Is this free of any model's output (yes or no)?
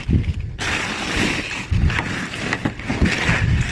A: yes